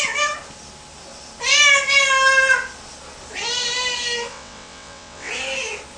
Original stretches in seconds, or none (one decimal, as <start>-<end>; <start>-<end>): 0.0-4.3; 5.3-6.0